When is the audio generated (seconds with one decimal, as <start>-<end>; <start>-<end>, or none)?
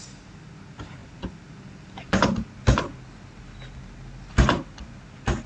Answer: none